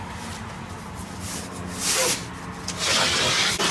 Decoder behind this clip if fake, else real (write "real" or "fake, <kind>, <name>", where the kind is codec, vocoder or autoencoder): real